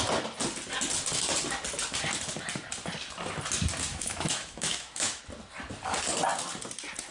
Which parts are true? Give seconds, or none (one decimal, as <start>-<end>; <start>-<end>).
0.0-3.9; 5.2-7.1